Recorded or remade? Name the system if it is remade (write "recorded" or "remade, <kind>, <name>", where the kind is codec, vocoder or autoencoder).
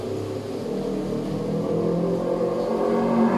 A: recorded